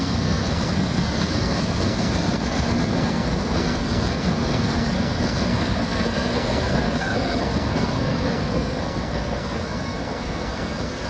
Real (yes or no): no